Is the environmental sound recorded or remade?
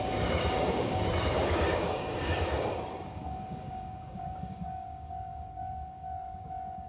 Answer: remade